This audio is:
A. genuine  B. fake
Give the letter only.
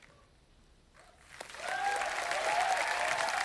A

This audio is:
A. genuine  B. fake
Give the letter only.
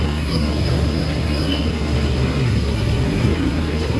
B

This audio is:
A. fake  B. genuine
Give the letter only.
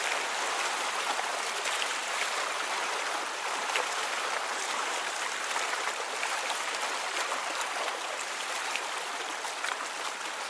B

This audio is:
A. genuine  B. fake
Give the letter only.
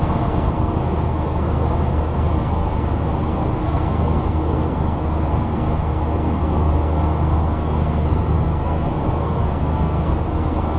B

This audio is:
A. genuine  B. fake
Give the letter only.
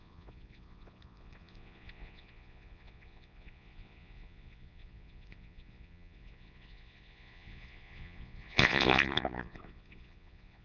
B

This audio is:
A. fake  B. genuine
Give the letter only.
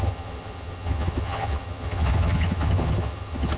A